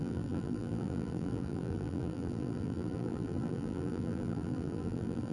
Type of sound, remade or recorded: remade